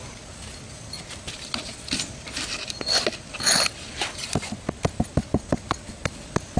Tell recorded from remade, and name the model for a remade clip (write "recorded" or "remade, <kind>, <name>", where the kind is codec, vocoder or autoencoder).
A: recorded